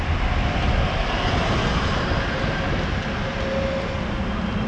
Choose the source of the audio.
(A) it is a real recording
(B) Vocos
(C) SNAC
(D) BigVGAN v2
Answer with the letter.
A